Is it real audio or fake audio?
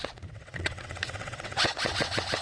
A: fake